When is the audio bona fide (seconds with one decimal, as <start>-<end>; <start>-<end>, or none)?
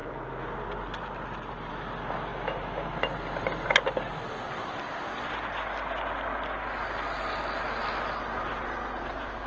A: 0.0-9.5